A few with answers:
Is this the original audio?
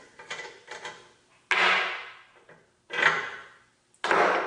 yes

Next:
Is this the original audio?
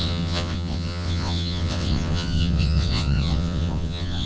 no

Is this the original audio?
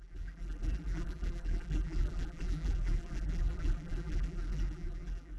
no